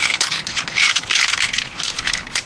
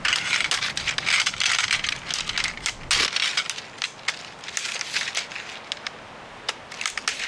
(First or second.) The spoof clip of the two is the first